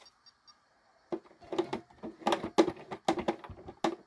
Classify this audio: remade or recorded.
recorded